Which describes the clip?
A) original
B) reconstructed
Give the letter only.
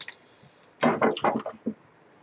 A